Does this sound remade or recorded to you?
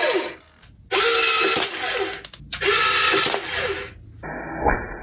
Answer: recorded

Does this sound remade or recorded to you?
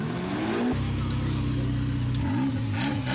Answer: recorded